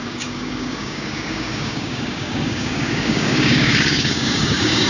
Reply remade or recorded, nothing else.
remade